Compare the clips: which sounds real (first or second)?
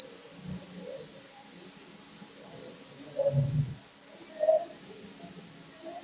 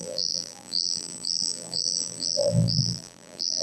first